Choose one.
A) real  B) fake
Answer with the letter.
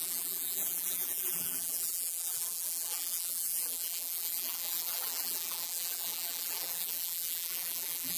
B